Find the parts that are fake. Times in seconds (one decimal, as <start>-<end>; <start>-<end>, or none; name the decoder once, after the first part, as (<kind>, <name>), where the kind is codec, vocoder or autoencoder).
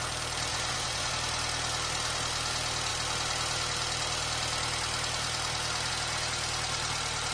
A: 0.5-1.1 (vocoder, Vocos)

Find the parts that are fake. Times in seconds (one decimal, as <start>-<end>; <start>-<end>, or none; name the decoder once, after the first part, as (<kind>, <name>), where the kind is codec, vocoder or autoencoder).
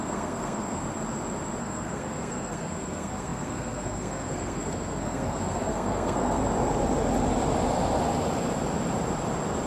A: 0.0-0.8 (codec, SNAC); 1.6-6.4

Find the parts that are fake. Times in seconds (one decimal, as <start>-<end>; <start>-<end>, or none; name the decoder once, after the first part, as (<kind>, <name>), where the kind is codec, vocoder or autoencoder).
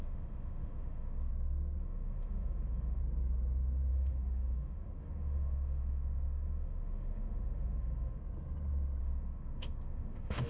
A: 0.0-1.3 (autoencoder, DAC-VAE); 1.8-3.0; 3.9-8.2; 9.0-10.5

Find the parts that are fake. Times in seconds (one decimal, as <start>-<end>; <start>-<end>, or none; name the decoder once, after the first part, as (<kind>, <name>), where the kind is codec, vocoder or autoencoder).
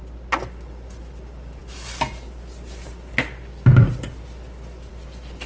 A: none